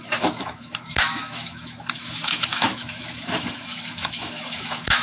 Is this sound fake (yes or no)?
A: yes